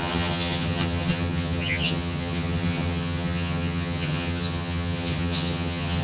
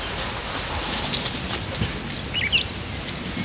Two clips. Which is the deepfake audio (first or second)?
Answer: first